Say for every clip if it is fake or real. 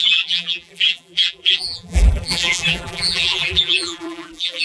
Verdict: fake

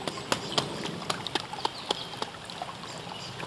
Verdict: real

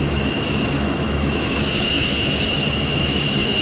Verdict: fake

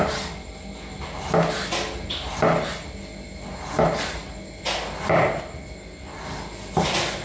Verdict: real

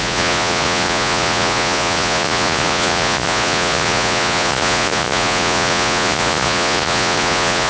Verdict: fake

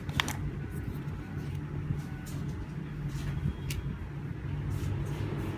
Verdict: real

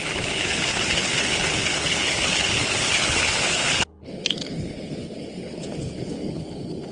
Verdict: fake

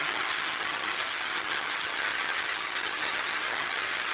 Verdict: fake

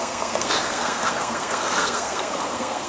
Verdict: fake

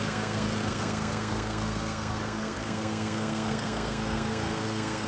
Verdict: fake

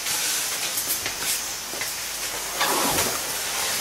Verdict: real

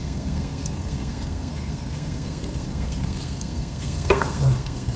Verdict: fake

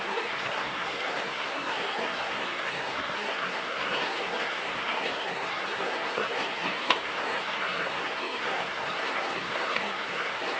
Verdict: fake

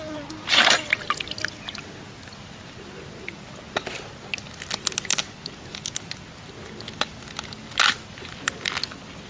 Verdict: real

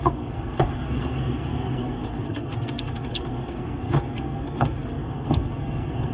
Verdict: fake